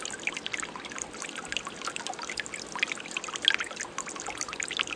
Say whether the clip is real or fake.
real